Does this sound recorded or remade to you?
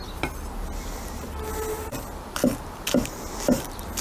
recorded